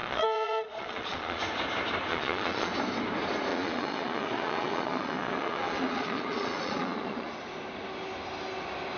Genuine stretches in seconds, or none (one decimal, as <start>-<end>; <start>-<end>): 1.4-2.1; 2.7-3.5; 7.3-9.0